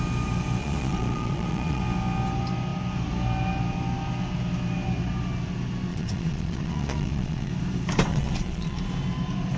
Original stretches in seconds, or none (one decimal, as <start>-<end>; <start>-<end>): 0.0-0.6; 1.8-5.9; 7.5-8.1; 8.8-9.6